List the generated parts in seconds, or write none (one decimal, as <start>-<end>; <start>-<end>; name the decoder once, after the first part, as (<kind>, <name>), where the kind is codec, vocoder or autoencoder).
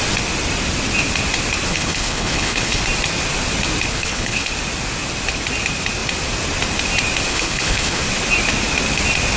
1.7-2.8 (codec, HILCodec); 3.9-4.5; 7.3-8.0